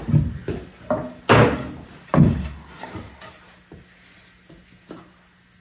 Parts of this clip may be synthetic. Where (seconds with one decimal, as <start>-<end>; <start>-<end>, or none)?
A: none